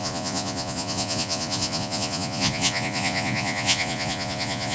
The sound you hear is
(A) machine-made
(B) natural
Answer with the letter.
A